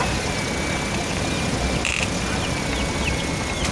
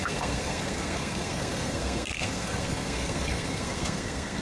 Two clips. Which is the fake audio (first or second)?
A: second